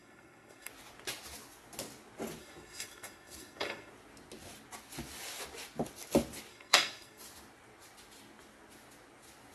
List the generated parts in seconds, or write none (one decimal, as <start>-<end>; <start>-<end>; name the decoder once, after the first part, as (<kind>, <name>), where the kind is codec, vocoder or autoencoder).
0.0-0.7 (codec, SNAC); 2.4-3.9; 6.5-7.2